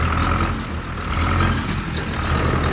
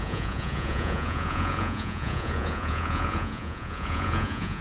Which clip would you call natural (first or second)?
first